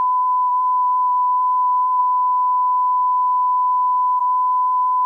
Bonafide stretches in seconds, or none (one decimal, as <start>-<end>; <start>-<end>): 2.0-4.2